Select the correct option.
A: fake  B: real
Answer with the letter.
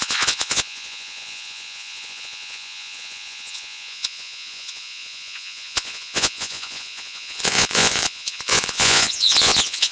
A